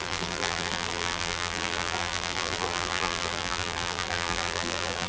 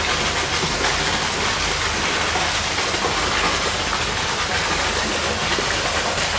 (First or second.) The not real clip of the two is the first